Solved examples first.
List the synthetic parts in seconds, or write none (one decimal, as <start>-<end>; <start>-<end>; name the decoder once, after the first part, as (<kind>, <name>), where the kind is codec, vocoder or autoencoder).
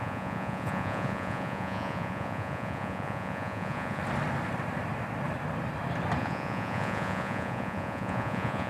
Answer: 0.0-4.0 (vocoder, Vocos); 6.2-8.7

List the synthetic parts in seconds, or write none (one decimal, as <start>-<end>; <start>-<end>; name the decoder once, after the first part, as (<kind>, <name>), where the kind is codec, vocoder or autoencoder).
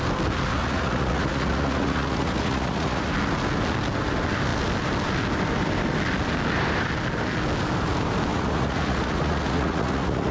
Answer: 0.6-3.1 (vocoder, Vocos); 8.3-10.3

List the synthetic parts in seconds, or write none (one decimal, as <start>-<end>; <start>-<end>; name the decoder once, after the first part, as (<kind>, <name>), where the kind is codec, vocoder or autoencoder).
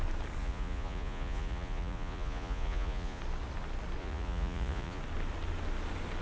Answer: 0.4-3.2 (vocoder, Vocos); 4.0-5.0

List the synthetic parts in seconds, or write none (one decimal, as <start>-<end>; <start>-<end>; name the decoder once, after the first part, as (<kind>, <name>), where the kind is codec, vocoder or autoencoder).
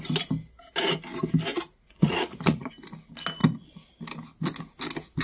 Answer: 1.5-2.7 (vocoder, Vocos)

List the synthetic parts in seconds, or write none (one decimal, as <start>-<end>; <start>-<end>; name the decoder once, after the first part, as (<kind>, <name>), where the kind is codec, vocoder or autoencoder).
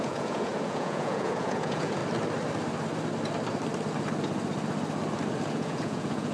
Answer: 0.0-2.0 (vocoder, Vocos); 5.5-6.3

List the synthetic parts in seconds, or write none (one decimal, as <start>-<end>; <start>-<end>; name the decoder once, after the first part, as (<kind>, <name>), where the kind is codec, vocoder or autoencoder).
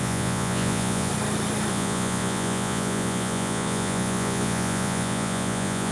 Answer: 0.0-1.1 (vocoder, Vocos); 1.7-5.9